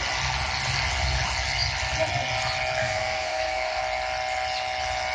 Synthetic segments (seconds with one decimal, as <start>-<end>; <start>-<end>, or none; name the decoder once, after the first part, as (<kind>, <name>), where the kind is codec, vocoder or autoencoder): 2.8-3.8 (codec, SNAC)